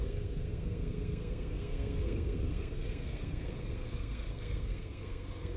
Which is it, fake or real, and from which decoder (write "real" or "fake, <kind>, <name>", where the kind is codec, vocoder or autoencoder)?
fake, codec, SNAC